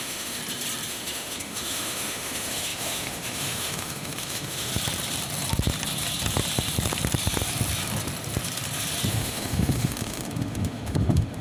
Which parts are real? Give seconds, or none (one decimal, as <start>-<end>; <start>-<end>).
0.4-0.9; 4.7-9.1